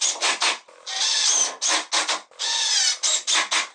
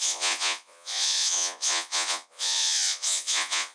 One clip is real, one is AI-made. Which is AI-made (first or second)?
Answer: second